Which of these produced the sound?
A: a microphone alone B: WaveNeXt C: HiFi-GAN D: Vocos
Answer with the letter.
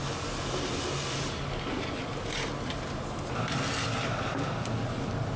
A